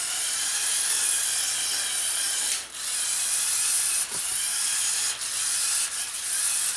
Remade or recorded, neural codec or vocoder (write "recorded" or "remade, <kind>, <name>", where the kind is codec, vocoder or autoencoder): recorded